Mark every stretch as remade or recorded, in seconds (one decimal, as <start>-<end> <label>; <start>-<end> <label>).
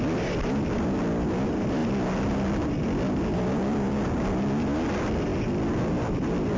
0.0-6.6 recorded